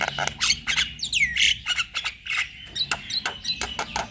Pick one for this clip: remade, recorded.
recorded